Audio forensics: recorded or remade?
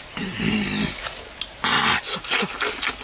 recorded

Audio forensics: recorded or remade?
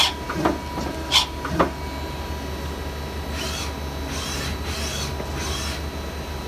recorded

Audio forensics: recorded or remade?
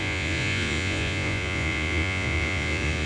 remade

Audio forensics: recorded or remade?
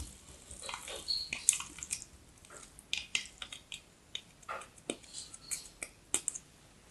recorded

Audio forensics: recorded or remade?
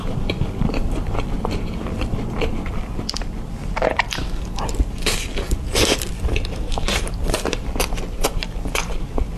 remade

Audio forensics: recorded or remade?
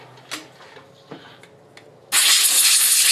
recorded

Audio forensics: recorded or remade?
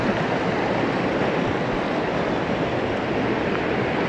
recorded